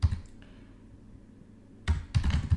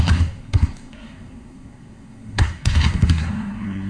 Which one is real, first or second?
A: first